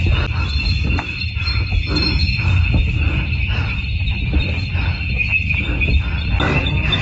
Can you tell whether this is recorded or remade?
recorded